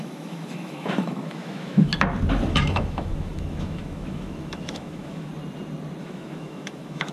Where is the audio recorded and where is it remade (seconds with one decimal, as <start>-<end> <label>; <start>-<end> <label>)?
0.0-1.9 remade; 1.9-2.5 recorded; 2.5-5.3 remade; 5.3-6.0 recorded; 6.0-7.1 remade

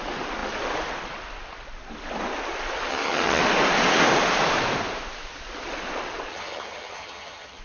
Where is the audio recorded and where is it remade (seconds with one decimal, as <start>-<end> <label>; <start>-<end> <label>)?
0.0-2.9 recorded; 2.9-3.4 remade; 3.4-6.3 recorded; 6.3-7.6 remade

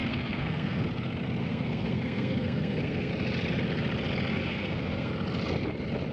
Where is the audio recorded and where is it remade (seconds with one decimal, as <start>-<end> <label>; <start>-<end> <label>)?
0.0-0.8 remade; 0.8-1.4 recorded; 1.4-3.1 remade; 3.1-4.3 recorded; 4.3-5.1 remade; 5.1-6.1 recorded

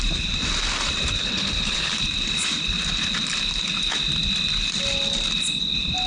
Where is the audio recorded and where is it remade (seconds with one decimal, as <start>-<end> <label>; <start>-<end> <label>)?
0.0-1.2 recorded; 1.2-1.9 remade; 1.9-6.1 recorded